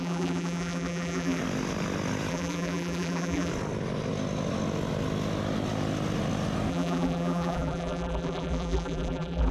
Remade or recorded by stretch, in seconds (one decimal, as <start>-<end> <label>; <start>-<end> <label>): 0.0-1.4 remade; 1.4-2.3 recorded; 2.3-3.5 remade; 3.5-6.7 recorded; 6.7-9.5 remade